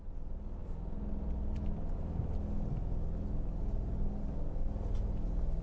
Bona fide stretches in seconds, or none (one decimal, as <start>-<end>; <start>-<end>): 0.0-5.6

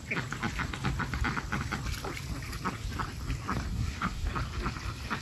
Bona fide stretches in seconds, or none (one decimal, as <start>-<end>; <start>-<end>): 0.0-3.7; 4.3-5.2

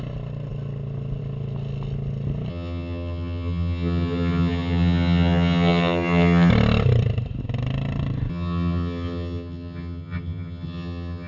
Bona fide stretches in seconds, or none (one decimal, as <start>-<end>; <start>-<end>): 0.0-2.5; 6.5-8.3

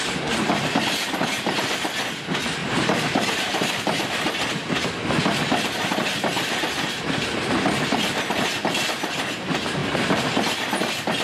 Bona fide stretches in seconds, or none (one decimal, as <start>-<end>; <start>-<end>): 0.0-2.6; 4.8-9.8; 10.4-11.2

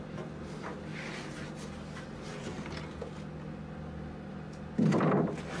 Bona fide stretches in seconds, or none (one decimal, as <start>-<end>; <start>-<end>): 0.0-5.6

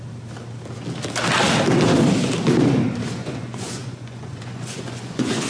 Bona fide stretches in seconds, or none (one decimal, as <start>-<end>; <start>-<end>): 0.0-3.2

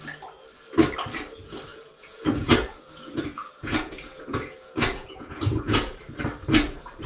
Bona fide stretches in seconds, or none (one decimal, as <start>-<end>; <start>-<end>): 0.0-1.7; 6.0-7.1